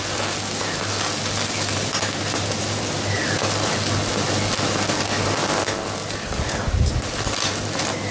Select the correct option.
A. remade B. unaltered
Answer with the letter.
B